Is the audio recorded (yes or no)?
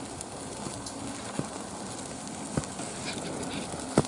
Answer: yes